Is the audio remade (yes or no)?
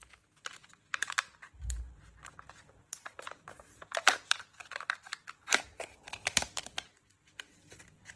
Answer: yes